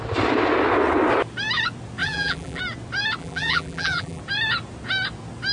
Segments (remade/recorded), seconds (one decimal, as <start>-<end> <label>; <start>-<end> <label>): 0.0-2.0 recorded; 2.0-2.6 remade; 2.6-3.2 recorded; 3.2-4.2 remade; 4.2-5.5 recorded